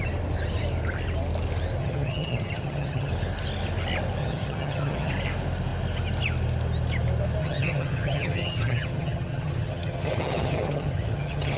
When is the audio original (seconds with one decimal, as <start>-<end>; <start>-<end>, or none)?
0.0-1.8; 3.1-4.2; 5.1-7.4